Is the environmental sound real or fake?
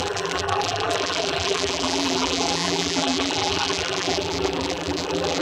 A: fake